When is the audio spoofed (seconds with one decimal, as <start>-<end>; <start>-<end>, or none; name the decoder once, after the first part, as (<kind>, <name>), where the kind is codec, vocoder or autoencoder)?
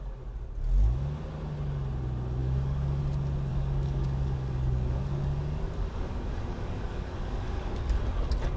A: 2.4-3.0 (codec, DAC); 3.5-8.0